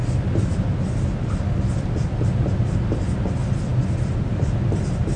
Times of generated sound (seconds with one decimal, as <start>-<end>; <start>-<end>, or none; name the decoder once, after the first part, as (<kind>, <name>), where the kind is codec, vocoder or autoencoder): none